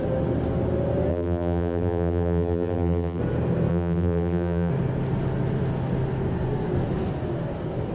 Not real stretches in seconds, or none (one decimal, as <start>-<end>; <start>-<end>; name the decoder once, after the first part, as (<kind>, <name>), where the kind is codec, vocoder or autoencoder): 1.1-3.2 (vocoder, BigVGAN v2); 3.7-4.7